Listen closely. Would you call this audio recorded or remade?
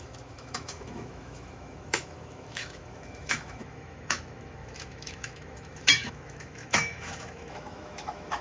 remade